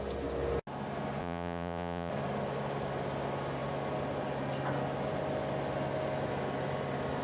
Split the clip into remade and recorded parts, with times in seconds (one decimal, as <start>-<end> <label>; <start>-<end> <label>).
0.0-1.2 recorded; 1.2-2.1 remade; 2.1-7.2 recorded